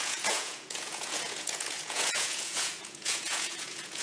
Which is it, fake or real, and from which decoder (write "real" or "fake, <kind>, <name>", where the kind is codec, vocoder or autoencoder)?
fake, vocoder, Vocos